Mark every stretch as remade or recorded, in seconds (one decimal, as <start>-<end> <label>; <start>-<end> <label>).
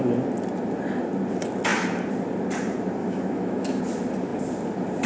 0.0-3.0 recorded; 3.0-3.8 remade; 3.8-5.1 recorded